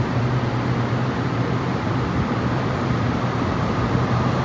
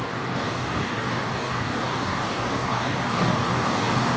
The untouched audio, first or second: first